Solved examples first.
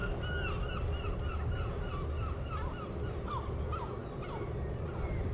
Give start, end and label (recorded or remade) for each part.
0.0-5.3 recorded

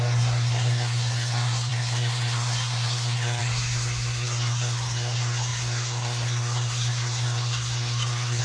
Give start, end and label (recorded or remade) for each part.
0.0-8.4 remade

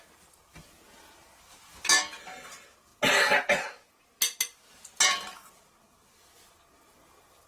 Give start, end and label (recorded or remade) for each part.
0.0-7.5 recorded

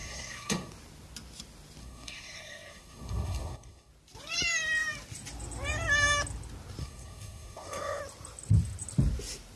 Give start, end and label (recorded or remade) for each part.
0.0-0.7 remade; 0.7-1.8 recorded; 1.8-3.9 remade; 3.9-6.8 recorded; 6.8-8.0 remade; 8.0-9.6 recorded

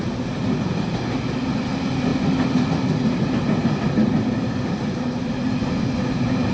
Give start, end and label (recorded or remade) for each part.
0.0-6.5 recorded

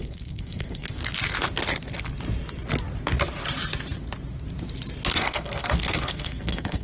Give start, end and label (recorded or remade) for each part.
0.0-1.0 remade; 1.0-5.1 recorded; 5.1-6.8 remade